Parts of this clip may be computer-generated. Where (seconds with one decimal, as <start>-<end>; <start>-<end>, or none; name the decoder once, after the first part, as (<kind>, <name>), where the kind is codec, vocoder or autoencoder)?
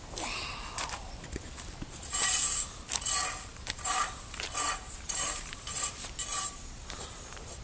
3.5-5.8 (vocoder, BigVGAN v2); 6.3-7.6